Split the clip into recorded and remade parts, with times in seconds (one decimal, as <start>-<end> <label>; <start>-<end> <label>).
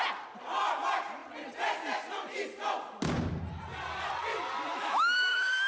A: 0.0-4.7 recorded; 4.7-5.7 remade